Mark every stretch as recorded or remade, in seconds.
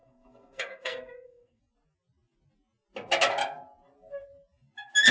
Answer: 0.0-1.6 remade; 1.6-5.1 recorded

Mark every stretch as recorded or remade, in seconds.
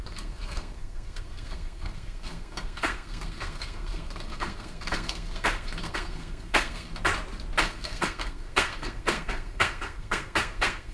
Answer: 0.0-6.9 remade; 6.9-7.6 recorded; 7.6-10.9 remade